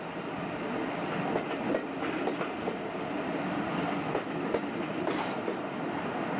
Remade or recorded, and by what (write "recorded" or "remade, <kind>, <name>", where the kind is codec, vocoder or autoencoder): recorded